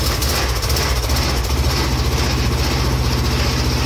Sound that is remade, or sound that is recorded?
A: recorded